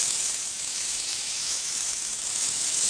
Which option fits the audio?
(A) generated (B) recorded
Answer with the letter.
A